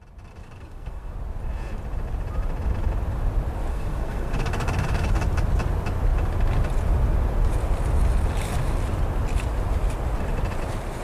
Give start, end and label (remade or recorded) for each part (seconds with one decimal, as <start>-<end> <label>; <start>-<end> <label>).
0.0-0.4 recorded; 0.4-1.1 remade; 1.1-3.7 recorded; 3.7-5.2 remade; 5.2-11.0 recorded